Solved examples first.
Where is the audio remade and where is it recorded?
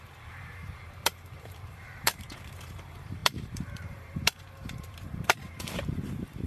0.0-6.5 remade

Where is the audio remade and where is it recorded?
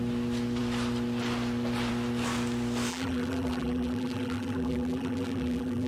0.0-2.9 recorded; 2.9-5.9 remade